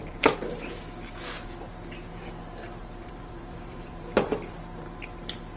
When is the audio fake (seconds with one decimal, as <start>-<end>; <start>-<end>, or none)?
2.8-4.6